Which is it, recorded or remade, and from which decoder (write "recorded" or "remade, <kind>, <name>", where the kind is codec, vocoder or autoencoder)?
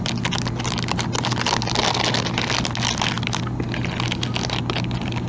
recorded